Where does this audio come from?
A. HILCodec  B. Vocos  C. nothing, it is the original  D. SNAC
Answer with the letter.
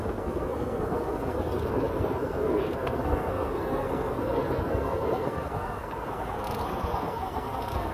D